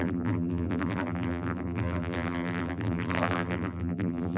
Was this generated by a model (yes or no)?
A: yes